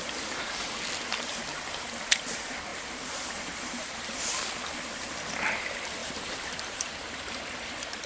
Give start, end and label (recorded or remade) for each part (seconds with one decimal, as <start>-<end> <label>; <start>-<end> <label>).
0.0-2.7 recorded; 2.7-4.2 remade; 4.2-6.0 recorded; 6.0-7.4 remade; 7.4-8.1 recorded